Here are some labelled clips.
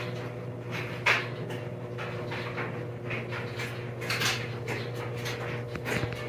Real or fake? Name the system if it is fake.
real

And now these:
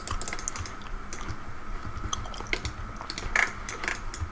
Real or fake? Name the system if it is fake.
real